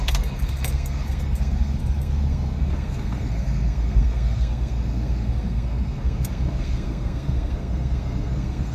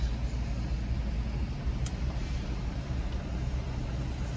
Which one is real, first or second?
second